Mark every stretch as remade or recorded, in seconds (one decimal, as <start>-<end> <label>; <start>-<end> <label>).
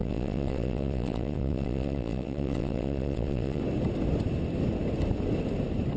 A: 0.0-3.6 remade; 3.6-6.0 recorded